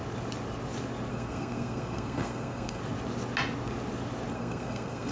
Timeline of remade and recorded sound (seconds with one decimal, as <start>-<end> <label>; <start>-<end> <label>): 0.0-1.1 recorded; 1.1-2.8 remade; 2.8-4.3 recorded; 4.3-5.1 remade